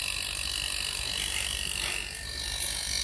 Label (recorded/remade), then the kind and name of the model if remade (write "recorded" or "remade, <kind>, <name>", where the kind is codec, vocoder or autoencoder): recorded